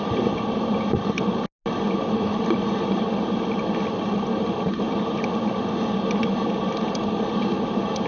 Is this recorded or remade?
recorded